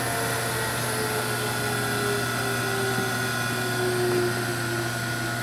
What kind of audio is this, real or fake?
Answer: real